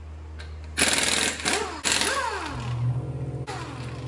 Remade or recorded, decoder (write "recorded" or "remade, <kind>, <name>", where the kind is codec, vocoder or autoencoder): recorded